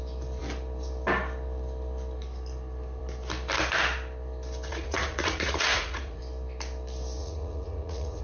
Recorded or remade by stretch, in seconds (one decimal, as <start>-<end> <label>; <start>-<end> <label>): 0.0-4.7 recorded; 4.7-6.2 remade; 6.2-7.2 recorded; 7.2-8.2 remade

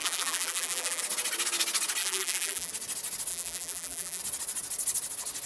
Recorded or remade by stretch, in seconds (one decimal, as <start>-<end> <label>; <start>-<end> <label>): 0.0-1.0 remade; 1.0-2.0 recorded; 2.0-2.7 remade; 2.7-3.3 recorded; 3.3-4.2 remade; 4.2-5.5 recorded

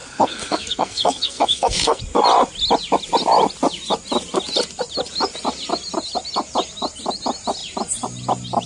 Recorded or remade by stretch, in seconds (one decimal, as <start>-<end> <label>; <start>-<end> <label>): 0.0-2.0 remade; 2.0-8.7 recorded

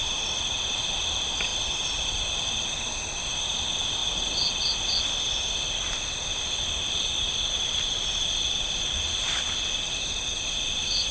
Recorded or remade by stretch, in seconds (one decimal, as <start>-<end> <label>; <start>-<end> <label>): 0.0-11.1 recorded

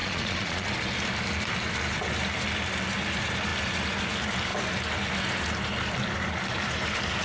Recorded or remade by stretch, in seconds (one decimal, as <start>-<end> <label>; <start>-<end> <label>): 0.0-0.7 remade; 0.7-7.2 recorded